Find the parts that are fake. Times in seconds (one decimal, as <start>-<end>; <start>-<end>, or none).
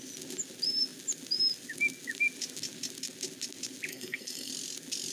3.9-4.5